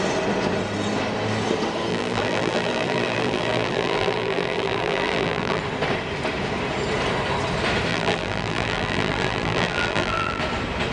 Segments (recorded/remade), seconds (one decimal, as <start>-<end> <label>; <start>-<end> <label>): 0.0-1.9 recorded; 1.9-5.6 remade; 5.6-7.9 recorded; 7.9-10.4 remade; 10.4-10.9 recorded